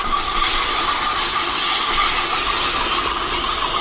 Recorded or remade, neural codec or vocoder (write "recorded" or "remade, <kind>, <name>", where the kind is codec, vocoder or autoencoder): recorded